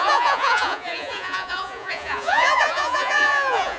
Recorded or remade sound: remade